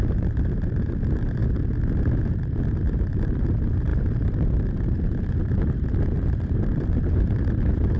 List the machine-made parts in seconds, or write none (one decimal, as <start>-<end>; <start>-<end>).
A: 0.0-1.4; 2.2-8.0